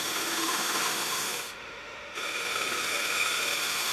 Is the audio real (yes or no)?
no